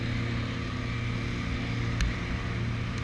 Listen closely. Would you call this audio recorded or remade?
recorded